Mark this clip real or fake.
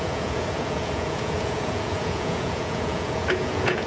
fake